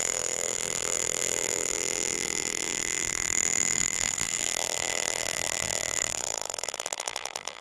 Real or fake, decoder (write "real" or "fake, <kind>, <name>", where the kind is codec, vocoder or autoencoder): fake, vocoder, BigVGAN v2